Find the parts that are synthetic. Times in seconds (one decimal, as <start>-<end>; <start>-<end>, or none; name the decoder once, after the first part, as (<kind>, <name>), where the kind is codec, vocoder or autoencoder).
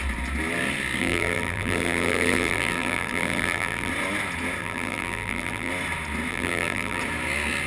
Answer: 1.0-3.9 (vocoder, BigVGAN v2); 4.6-5.7; 6.3-7.0